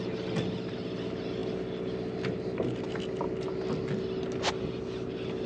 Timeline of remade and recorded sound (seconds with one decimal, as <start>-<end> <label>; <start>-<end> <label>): 0.0-5.5 recorded